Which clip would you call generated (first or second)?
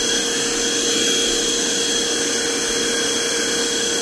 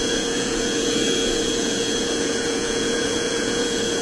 second